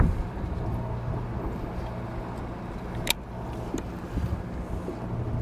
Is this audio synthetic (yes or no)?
no